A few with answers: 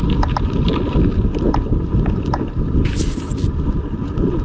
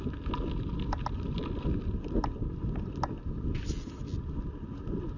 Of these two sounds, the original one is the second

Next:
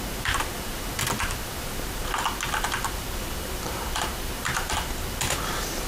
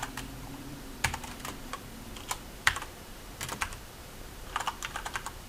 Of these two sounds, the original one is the first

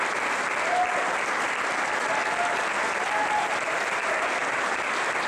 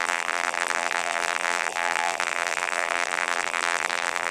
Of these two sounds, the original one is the first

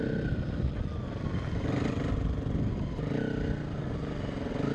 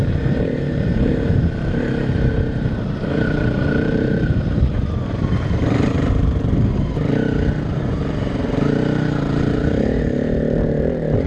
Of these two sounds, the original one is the first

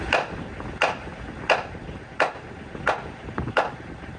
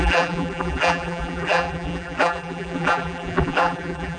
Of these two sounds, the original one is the first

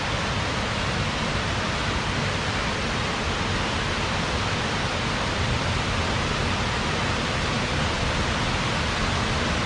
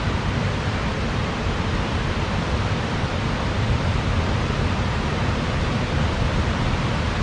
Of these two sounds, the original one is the first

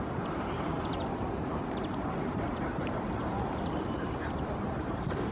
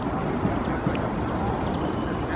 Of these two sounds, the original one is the second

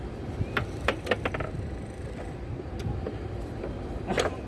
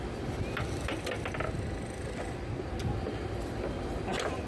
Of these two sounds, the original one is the second